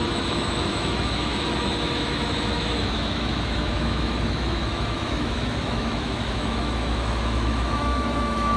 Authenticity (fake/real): fake